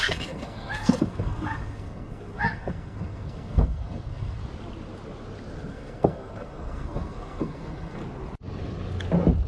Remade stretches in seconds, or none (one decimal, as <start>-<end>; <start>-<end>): 0.0-4.4; 5.7-8.0

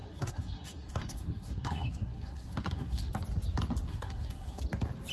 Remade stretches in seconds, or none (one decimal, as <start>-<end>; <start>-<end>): 0.0-3.1; 3.9-4.6